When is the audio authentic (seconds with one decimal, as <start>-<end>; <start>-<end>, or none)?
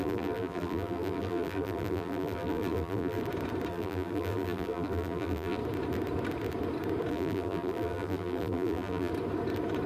3.2-3.7; 5.6-7.1; 9.1-9.9